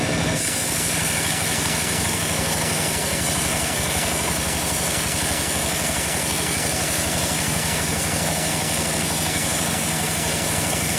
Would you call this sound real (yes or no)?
no